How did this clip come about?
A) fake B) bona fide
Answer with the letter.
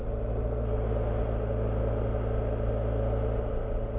B